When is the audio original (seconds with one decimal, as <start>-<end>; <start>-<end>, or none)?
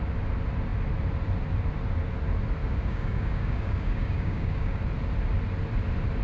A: 0.0-2.6; 4.8-6.2